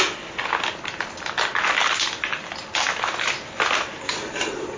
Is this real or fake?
real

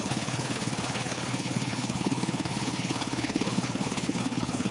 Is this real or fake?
fake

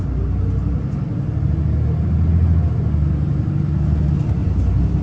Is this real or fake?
real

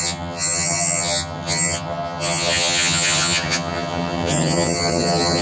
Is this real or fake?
fake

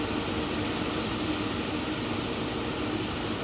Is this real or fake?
real